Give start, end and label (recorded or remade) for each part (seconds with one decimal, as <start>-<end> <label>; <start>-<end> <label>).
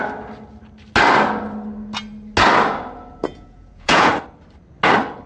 0.0-3.2 recorded; 3.2-4.1 remade; 4.1-5.3 recorded